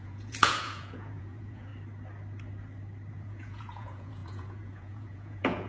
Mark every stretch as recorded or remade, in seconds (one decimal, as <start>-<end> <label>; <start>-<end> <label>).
0.0-1.7 remade; 1.7-3.1 recorded; 3.1-5.7 remade